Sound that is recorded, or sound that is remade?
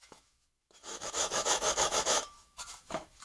remade